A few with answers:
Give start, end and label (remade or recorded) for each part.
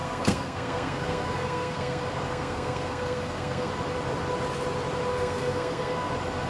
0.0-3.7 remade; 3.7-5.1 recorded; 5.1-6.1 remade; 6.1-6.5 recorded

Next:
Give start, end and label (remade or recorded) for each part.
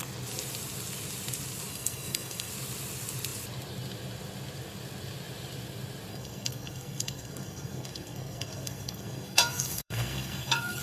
0.0-1.7 recorded; 1.7-2.5 remade; 2.5-6.1 recorded; 6.1-10.8 remade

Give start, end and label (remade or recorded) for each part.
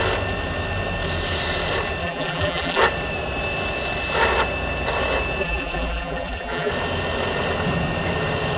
0.0-2.0 recorded; 2.0-2.8 remade; 2.8-5.4 recorded; 5.4-6.7 remade; 6.7-8.6 recorded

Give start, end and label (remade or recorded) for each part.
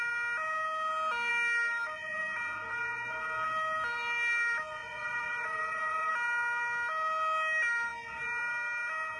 0.0-4.8 recorded; 4.8-6.1 remade; 6.1-9.2 recorded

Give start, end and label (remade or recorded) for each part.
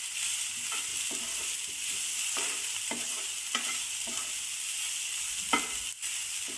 0.0-6.6 recorded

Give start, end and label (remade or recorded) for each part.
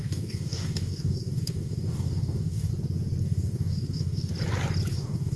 0.0-2.7 remade; 2.7-3.2 recorded; 3.2-4.3 remade; 4.3-4.9 recorded; 4.9-5.4 remade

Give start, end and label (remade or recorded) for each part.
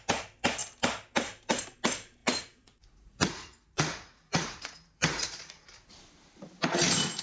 0.0-2.2 recorded; 2.2-5.9 remade; 5.9-7.2 recorded